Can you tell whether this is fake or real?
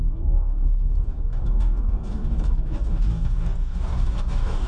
fake